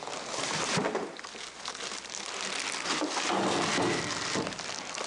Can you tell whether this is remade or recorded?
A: recorded